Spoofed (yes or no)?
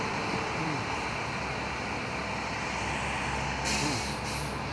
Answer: no